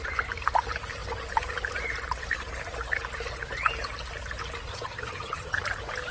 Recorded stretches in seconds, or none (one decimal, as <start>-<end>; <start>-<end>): 0.0-4.7; 5.6-6.1